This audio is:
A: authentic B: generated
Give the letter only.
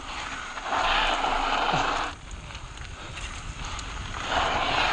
A